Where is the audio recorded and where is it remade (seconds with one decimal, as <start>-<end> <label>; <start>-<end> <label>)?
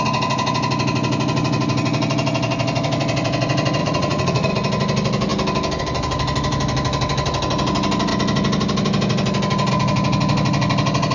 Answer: 0.0-3.8 recorded; 3.8-4.5 remade; 4.5-11.1 recorded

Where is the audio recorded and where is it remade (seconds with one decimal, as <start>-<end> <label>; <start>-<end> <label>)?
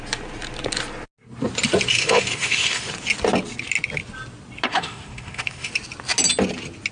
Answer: 0.0-1.9 recorded; 1.9-2.9 remade; 2.9-4.7 recorded; 4.7-5.7 remade; 5.7-6.9 recorded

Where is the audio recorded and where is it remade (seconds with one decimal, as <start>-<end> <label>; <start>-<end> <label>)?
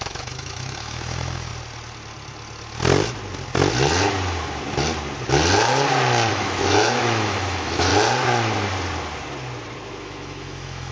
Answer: 0.0-1.5 remade; 1.5-6.3 recorded; 6.3-7.9 remade; 7.9-10.0 recorded; 10.0-10.9 remade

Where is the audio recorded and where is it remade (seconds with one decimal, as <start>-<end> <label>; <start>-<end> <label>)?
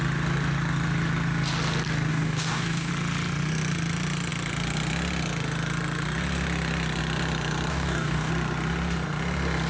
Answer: 0.0-2.1 recorded; 2.1-2.9 remade; 2.9-7.7 recorded; 7.7-8.3 remade; 8.3-9.7 recorded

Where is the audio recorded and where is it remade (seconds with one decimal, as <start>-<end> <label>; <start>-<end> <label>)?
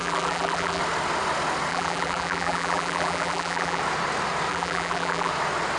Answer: 0.0-0.8 remade; 0.8-1.7 recorded; 1.7-3.8 remade; 3.8-4.5 recorded; 4.5-5.3 remade; 5.3-5.8 recorded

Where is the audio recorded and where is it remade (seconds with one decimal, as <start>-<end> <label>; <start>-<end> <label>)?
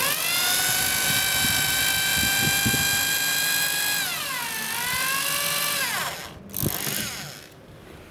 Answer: 0.0-8.1 recorded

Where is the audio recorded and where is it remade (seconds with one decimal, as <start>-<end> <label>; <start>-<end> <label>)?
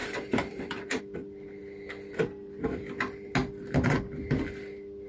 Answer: 0.0-1.0 remade; 1.0-5.1 recorded